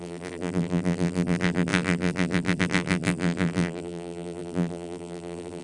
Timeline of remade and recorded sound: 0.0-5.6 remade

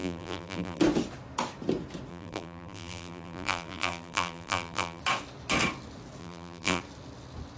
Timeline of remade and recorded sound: 0.0-0.8 remade; 0.8-2.1 recorded; 2.1-5.0 remade; 5.0-6.2 recorded; 6.2-6.8 remade; 6.8-7.6 recorded

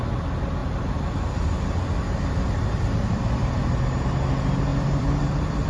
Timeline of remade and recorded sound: 0.0-0.6 recorded; 0.6-3.8 remade; 3.8-4.7 recorded; 4.7-5.7 remade

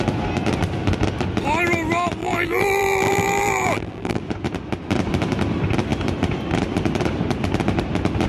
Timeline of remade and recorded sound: 0.0-2.2 recorded; 2.2-4.2 remade; 4.2-8.3 recorded

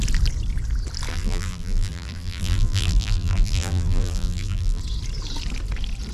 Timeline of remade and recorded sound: 0.0-1.1 recorded; 1.1-4.8 remade; 4.8-6.1 recorded